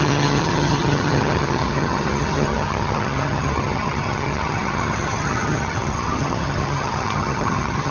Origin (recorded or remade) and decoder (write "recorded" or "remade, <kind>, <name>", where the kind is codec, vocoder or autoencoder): remade, vocoder, HiFi-GAN